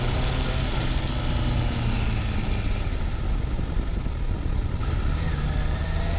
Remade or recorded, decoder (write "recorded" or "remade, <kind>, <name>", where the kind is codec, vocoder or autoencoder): recorded